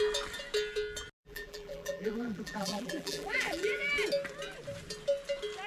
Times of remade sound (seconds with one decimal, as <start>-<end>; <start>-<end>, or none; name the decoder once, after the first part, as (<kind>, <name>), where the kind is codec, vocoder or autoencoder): 1.2-3.9 (vocoder, BigVGAN v2)